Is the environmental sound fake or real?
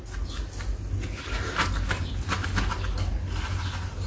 real